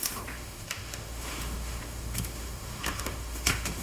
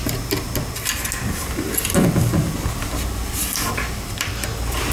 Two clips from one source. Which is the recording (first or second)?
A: second